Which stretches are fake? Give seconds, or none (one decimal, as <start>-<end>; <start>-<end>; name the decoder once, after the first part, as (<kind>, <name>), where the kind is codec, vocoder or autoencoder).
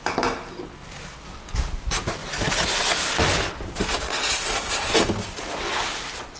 none